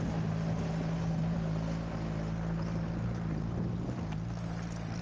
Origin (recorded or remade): recorded